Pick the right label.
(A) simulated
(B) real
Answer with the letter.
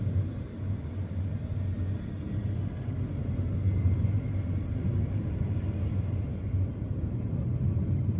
B